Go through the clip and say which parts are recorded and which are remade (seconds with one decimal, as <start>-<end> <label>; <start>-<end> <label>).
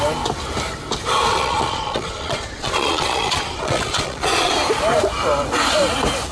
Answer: 0.0-1.3 recorded; 1.3-4.5 remade; 4.5-6.3 recorded